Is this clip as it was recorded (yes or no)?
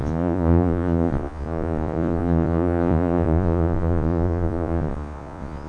no